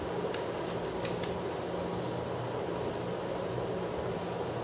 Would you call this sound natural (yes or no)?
yes